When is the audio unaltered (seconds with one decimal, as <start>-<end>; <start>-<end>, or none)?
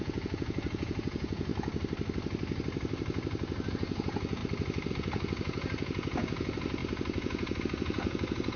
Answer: 1.5-3.7; 4.4-4.9